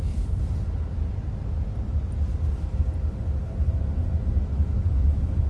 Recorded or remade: recorded